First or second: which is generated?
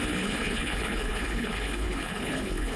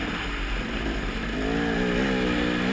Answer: first